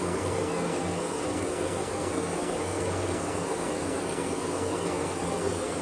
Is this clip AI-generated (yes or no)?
yes